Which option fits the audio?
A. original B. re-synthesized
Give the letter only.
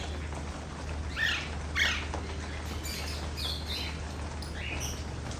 A